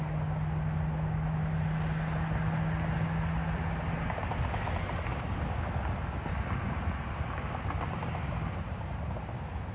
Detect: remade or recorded recorded